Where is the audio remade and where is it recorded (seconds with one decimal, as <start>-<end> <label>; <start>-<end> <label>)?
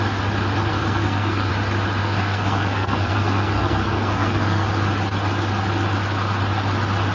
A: 0.0-0.7 recorded; 0.7-1.5 remade; 1.5-2.0 recorded; 2.0-4.7 remade; 4.7-7.1 recorded